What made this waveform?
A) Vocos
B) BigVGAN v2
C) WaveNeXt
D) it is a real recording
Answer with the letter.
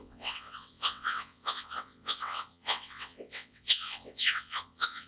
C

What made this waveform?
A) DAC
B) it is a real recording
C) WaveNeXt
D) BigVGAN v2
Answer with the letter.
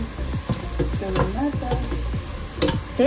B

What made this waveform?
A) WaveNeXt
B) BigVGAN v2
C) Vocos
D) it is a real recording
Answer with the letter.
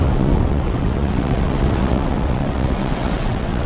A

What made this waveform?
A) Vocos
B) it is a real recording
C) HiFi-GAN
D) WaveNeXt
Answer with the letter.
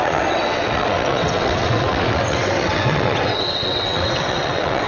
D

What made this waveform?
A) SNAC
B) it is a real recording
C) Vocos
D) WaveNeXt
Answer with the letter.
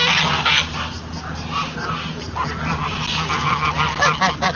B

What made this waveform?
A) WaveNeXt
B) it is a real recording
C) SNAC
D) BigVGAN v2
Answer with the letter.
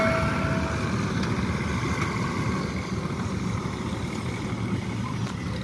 B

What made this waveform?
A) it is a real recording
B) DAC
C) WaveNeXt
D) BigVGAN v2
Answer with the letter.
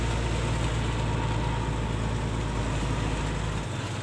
A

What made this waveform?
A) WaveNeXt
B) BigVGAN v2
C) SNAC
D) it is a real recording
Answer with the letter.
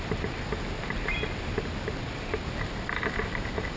D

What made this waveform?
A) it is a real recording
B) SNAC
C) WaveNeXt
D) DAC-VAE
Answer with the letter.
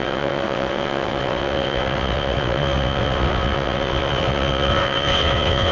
C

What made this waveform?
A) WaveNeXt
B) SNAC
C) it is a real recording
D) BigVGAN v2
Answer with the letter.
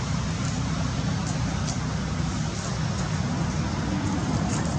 C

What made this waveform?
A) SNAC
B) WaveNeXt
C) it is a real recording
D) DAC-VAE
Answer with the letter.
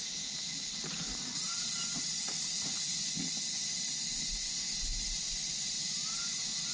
C